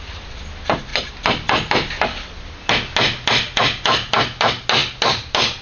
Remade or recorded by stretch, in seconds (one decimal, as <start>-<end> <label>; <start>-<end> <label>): 0.0-5.6 recorded